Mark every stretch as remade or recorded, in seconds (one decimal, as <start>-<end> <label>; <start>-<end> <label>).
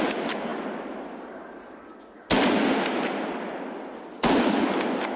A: 0.0-5.2 recorded